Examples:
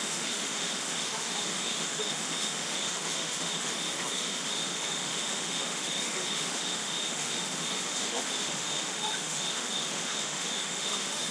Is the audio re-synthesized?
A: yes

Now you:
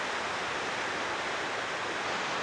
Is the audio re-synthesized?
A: no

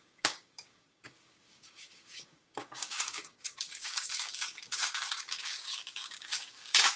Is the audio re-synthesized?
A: yes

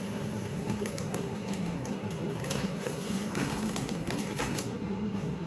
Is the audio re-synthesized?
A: yes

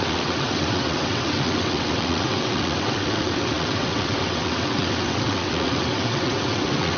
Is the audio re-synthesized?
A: yes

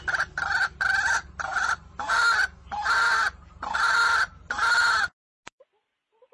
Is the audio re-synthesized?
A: no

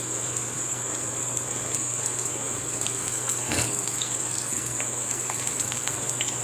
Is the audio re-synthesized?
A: yes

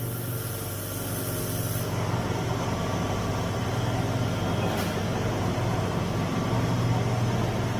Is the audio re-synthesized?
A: no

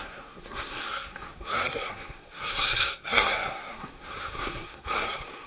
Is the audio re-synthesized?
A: yes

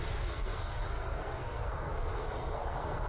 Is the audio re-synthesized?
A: yes